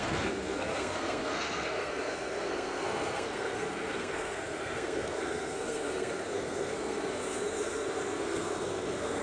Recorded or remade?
remade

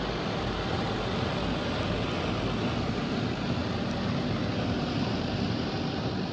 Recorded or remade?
recorded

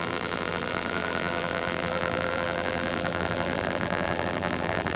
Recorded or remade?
remade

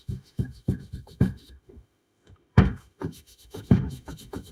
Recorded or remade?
remade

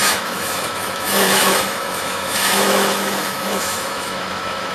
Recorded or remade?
remade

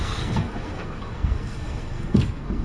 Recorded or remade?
remade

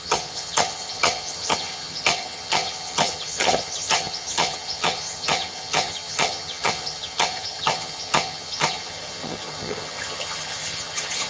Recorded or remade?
remade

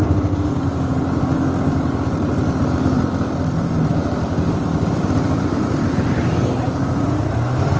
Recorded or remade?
remade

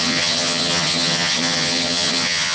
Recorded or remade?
remade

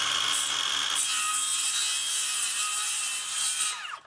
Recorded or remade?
recorded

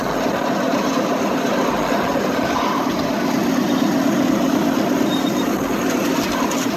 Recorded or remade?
recorded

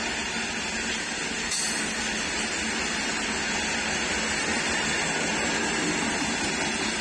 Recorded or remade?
recorded